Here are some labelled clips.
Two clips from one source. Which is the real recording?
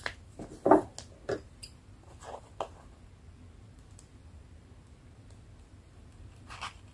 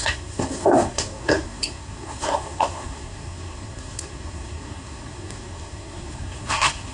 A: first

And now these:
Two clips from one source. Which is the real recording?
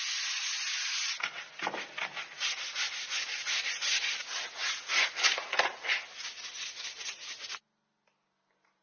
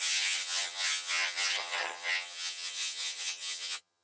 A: first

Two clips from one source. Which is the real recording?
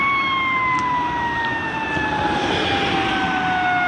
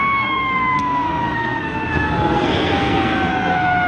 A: first